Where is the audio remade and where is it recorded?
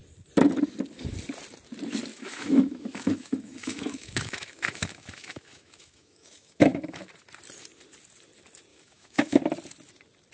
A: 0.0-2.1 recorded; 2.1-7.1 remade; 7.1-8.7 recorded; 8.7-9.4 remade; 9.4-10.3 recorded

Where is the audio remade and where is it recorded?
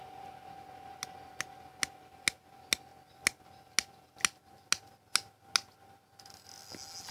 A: 0.0-7.1 recorded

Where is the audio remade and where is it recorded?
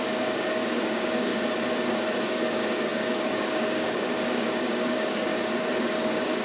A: 0.0-1.3 remade; 1.3-2.3 recorded; 2.3-5.3 remade; 5.3-5.8 recorded; 5.8-6.4 remade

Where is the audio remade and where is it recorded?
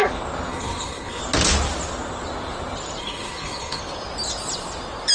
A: 0.0-0.5 recorded; 0.5-1.2 remade; 1.2-3.0 recorded; 3.0-3.8 remade; 3.8-5.1 recorded